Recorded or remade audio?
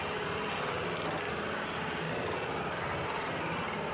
recorded